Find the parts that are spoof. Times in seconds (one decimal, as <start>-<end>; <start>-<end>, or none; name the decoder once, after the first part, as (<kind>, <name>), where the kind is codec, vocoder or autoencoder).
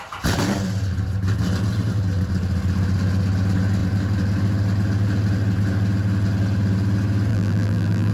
7.3-8.1 (vocoder, BigVGAN v2)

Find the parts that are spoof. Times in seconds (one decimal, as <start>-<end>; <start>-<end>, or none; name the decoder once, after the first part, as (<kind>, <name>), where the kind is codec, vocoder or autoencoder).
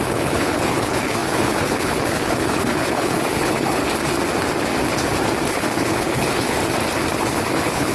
0.0-3.8 (codec, HILCodec); 5.5-6.6; 7.2-7.9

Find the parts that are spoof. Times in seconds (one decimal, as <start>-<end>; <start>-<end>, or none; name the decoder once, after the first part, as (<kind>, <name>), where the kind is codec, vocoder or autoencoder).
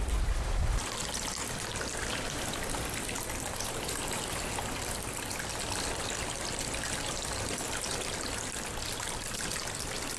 none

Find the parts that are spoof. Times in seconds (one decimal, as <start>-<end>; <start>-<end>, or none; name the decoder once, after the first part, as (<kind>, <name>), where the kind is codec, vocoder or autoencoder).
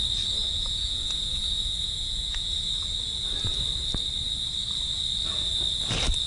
0.4-2.5 (vocoder, Vocos)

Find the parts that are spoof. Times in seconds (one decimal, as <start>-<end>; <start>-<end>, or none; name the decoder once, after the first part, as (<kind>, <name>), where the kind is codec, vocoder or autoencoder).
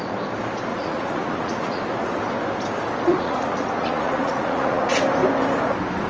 0.7-1.8 (vocoder, Vocos); 3.1-4.8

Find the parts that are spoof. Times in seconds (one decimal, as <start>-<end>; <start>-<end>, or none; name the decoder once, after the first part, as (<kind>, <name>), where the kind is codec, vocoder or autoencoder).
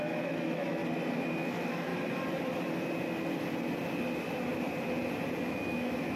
0.0-0.8 (autoencoder, DAC-VAE); 1.5-1.9; 5.4-6.2